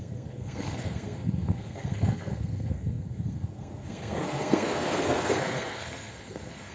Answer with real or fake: fake